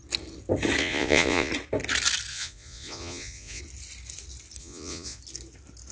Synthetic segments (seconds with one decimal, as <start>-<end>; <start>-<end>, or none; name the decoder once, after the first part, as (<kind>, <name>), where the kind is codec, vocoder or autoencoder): 0.8-1.5 (vocoder, Vocos); 2.3-3.6; 4.6-5.2